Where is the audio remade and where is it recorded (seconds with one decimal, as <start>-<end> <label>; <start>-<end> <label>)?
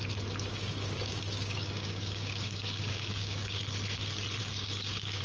0.0-0.5 recorded; 0.5-3.6 remade; 3.6-4.4 recorded; 4.4-5.2 remade